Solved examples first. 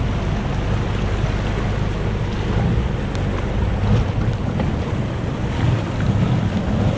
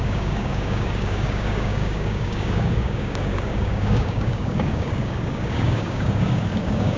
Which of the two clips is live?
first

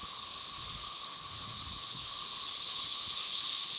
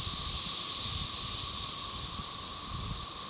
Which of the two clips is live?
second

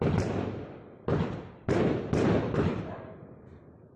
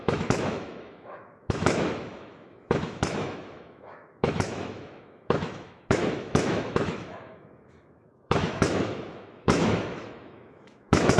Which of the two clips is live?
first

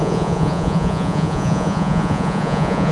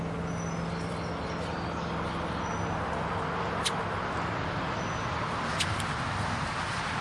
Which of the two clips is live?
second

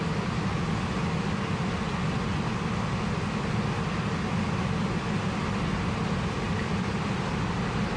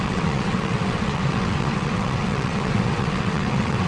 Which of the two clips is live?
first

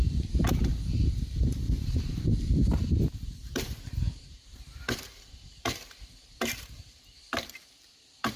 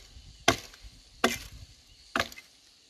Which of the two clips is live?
second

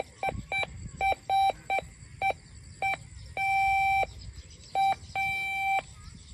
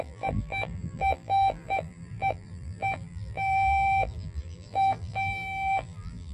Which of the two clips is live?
first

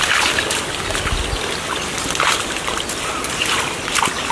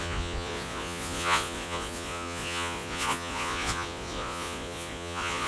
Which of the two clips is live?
first